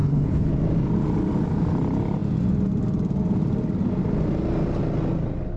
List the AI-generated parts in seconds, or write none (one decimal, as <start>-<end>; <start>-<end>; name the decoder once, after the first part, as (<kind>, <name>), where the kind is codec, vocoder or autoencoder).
0.0-0.5 (codec, HILCodec)